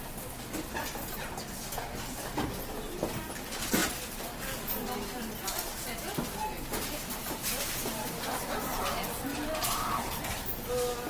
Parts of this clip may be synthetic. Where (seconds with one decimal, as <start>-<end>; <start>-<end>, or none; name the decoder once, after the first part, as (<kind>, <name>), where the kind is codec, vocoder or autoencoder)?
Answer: 3.8-4.6 (vocoder, BigVGAN v2); 7.5-10.2